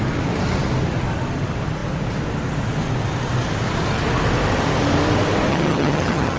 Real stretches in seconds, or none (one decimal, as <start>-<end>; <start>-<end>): 0.0-5.5